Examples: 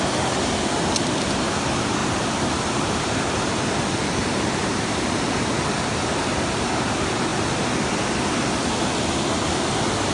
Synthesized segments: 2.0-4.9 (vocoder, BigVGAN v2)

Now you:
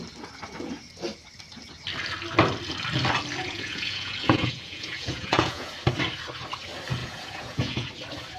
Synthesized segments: 3.4-5.7 (vocoder, Vocos); 7.0-7.9

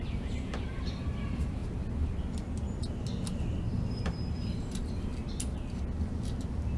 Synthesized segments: 0.0-1.6 (vocoder, BigVGAN v2); 4.0-5.1

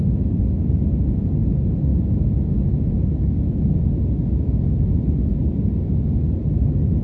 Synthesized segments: none

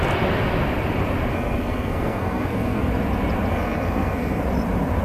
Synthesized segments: 1.3-2.9 (codec, SNAC); 3.5-4.4

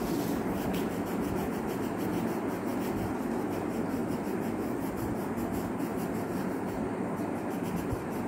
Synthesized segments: 5.9-7.8 (vocoder, BigVGAN v2)

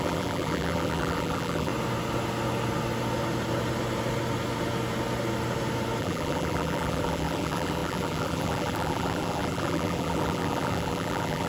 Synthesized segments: 0.0-1.7 (vocoder, BigVGAN v2); 6.0-11.5